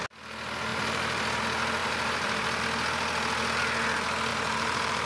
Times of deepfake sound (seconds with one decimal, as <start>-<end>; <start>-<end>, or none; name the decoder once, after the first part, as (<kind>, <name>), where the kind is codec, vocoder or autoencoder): 0.7-1.4 (vocoder, BigVGAN v2); 1.8-2.6; 4.3-5.1